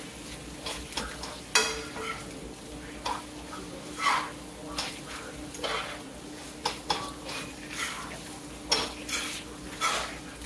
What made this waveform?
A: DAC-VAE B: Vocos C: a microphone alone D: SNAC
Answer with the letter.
C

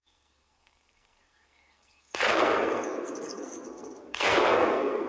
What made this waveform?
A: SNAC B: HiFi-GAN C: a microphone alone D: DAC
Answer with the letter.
A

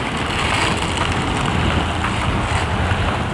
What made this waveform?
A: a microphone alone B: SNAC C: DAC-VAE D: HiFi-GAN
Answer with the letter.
A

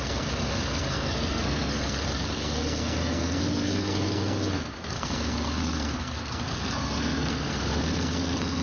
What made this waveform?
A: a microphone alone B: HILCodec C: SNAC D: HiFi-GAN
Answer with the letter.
C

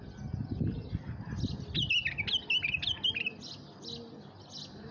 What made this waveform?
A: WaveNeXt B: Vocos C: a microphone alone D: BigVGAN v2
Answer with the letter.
C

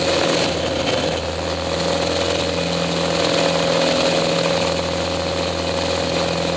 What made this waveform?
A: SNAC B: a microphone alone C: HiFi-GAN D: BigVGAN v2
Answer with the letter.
B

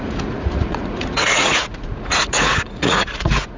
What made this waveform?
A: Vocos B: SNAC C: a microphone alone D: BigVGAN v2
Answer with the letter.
A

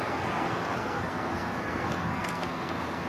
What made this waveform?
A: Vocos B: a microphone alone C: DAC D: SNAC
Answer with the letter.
D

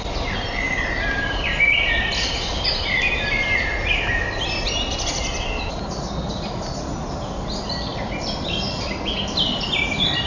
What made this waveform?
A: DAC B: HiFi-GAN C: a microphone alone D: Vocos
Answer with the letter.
C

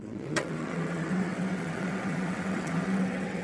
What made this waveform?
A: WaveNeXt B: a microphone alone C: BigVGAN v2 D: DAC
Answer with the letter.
A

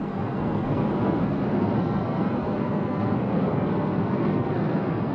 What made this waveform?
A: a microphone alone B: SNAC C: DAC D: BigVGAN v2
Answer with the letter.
B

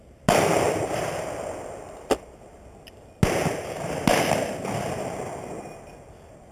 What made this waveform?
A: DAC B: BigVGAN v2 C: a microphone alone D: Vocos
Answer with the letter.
C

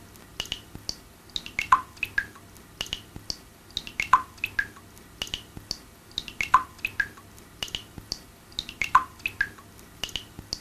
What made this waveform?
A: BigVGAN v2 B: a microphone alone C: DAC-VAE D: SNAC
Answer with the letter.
B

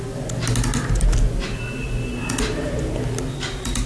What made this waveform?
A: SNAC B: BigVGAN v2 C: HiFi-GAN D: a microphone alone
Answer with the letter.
D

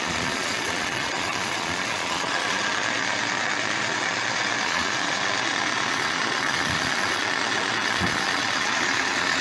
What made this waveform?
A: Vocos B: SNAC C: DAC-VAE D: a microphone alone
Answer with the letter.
A